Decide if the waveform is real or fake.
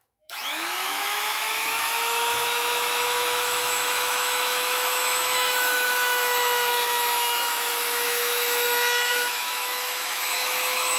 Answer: fake